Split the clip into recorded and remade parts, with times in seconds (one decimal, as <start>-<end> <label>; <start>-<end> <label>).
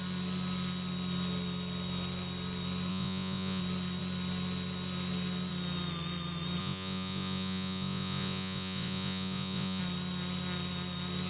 0.0-2.9 recorded; 2.9-3.6 remade; 3.6-6.6 recorded; 6.6-9.8 remade; 9.8-11.3 recorded